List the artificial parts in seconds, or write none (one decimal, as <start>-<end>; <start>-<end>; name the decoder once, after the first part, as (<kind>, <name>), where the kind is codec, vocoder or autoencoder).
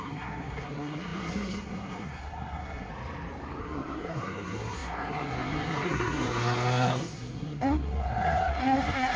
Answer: 0.0-2.9 (codec, SNAC); 3.6-9.2